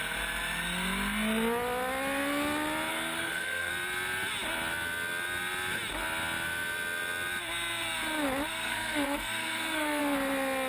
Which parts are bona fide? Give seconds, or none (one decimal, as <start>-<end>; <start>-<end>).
0.0-2.9; 3.7-8.5; 10.0-10.7